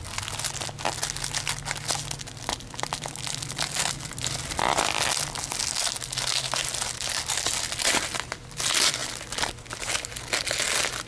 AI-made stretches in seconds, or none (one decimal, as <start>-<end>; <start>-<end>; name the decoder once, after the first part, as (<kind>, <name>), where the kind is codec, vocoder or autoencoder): none